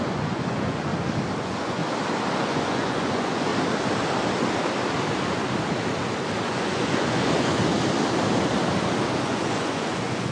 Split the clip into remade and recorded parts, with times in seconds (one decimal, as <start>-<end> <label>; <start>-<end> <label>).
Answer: 0.0-0.9 remade; 0.9-1.4 recorded; 1.4-1.8 remade; 1.8-2.4 recorded; 2.4-3.5 remade; 3.5-6.4 recorded; 6.4-7.6 remade; 7.6-9.2 recorded; 9.2-10.3 remade